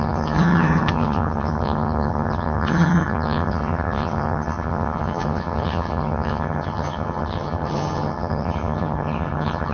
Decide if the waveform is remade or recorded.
remade